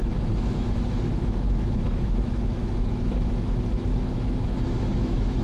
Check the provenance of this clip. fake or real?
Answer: fake